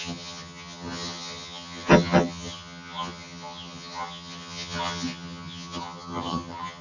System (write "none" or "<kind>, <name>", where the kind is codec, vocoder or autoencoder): vocoder, HiFi-GAN